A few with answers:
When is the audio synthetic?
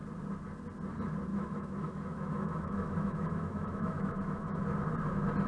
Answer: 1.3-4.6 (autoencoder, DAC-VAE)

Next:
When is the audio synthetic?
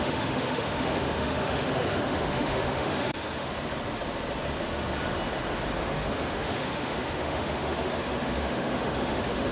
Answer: 0.0-3.5 (autoencoder, DAC-VAE); 5.8-9.5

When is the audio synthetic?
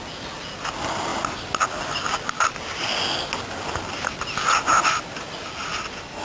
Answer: none